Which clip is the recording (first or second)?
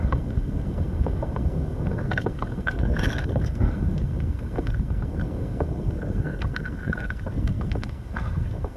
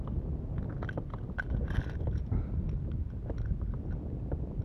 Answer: second